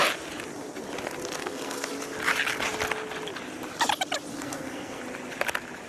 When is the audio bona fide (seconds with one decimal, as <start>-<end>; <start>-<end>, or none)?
0.0-1.4; 1.9-4.3; 5.0-5.9